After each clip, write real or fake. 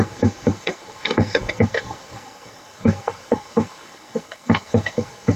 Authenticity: fake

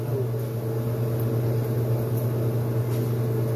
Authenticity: real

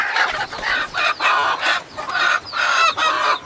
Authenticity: real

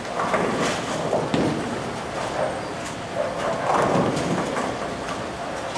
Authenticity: real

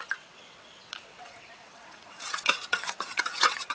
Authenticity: fake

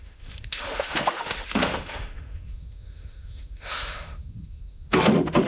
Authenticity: fake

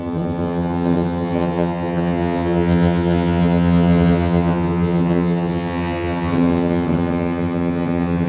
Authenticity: fake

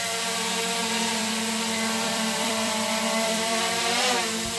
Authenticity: fake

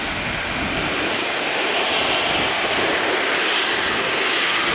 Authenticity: real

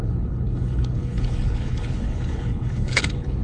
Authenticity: fake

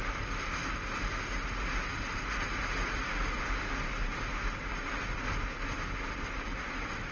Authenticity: real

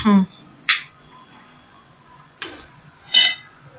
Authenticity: fake